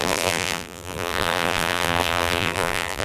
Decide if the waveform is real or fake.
fake